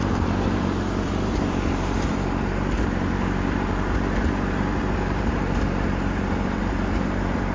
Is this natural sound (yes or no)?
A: no